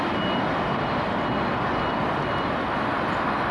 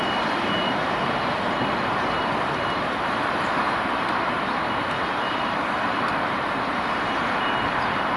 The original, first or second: first